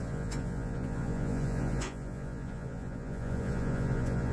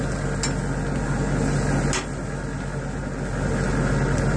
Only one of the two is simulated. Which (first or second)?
first